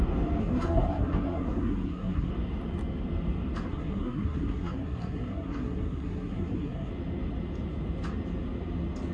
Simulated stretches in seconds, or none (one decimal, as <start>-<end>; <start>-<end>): 0.4-2.3; 3.7-6.9